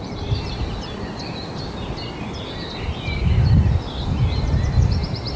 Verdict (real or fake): real